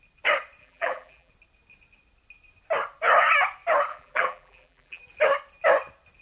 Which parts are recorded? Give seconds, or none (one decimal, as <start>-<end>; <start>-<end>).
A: 0.0-0.6; 1.3-3.9; 5.0-6.2

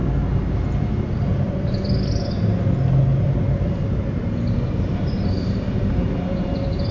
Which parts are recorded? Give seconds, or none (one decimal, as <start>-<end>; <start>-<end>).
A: 0.0-3.1

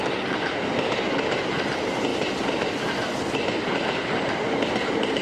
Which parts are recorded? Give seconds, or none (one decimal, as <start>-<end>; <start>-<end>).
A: 0.0-2.1

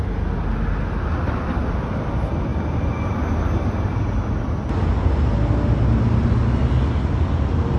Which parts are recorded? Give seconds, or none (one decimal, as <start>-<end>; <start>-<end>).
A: 0.0-7.8

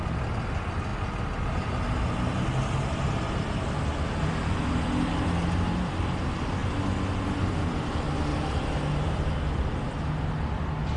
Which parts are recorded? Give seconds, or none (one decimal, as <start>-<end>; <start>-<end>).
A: 0.0-8.3; 9.3-11.0